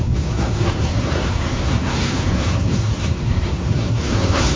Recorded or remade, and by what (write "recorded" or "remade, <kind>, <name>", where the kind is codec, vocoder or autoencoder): remade, codec, SNAC